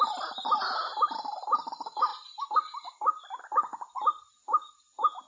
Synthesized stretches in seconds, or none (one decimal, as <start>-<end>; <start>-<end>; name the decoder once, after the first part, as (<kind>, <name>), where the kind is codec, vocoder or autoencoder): none

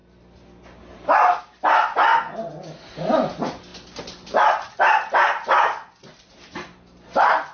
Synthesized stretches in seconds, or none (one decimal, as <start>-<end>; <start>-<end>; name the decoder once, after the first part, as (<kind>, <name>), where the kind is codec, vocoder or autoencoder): none

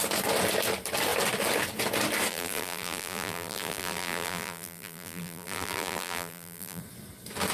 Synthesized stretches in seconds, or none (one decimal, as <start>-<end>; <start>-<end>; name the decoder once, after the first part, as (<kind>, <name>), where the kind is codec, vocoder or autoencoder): 2.3-6.8 (vocoder, BigVGAN v2)

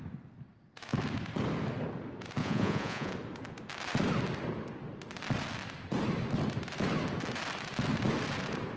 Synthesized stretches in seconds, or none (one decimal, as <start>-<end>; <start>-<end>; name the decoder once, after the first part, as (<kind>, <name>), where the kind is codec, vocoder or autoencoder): 2.4-3.1 (vocoder, Vocos)

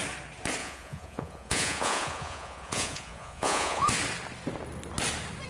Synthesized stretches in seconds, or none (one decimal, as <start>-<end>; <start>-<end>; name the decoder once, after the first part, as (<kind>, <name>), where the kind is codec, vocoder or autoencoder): 0.6-3.9 (vocoder, Vocos)

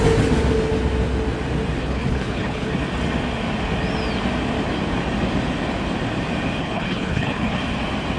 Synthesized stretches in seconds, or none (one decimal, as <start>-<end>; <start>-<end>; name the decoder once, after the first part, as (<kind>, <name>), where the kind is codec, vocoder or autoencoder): 1.8-2.7 (codec, HILCodec); 6.6-7.6

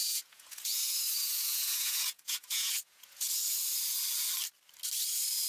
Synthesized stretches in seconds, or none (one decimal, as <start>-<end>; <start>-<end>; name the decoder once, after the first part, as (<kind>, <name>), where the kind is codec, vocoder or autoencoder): 0.0-3.4 (vocoder, Vocos)